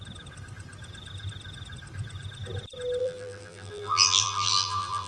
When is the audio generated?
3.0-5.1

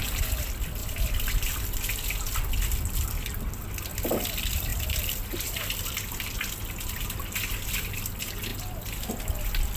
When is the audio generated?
0.8-1.8; 4.7-6.9; 8.5-9.2

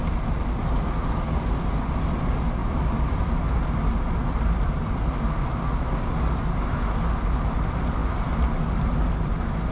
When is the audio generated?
2.6-3.2; 4.2-5.0

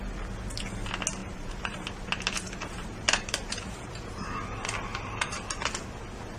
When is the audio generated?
1.2-4.3; 4.9-5.4

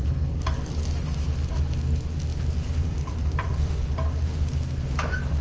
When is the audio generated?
2.3-3.5